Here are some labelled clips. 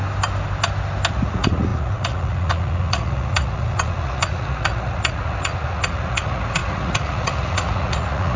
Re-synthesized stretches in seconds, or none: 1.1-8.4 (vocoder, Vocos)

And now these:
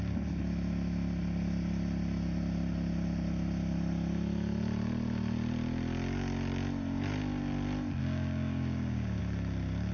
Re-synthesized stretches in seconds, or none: 8.0-9.2 (codec, DAC)

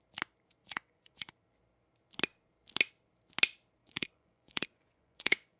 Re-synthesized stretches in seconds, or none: 0.6-1.3 (vocoder, Vocos); 3.8-5.6

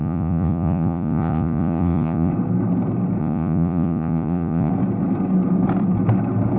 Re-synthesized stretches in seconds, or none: 0.0-2.3 (vocoder, Vocos); 3.2-4.7